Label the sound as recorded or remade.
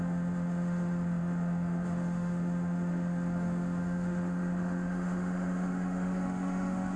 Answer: remade